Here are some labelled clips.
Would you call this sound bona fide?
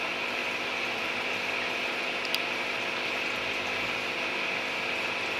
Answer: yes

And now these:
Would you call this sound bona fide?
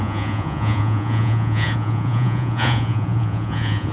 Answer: no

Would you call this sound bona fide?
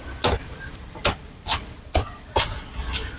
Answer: yes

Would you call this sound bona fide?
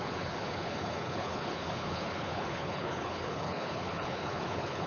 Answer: no